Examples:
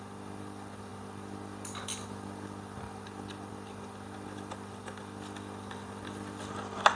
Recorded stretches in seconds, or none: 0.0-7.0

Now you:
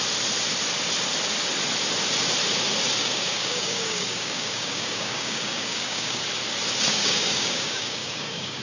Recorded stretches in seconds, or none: 0.0-3.0; 6.2-6.9

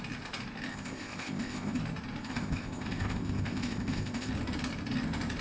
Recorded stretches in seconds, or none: 0.0-0.7; 1.8-2.2; 4.3-5.4

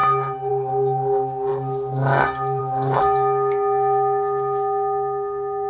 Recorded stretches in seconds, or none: 0.0-5.7

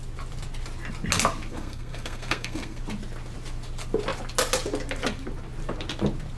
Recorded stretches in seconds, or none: 0.0-1.5; 2.8-6.4